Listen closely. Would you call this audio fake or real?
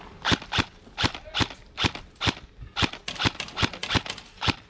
real